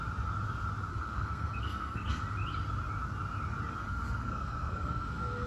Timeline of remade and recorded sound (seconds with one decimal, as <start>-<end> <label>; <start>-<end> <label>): 0.0-0.9 recorded; 0.9-2.2 remade; 2.2-3.8 recorded; 3.8-5.5 remade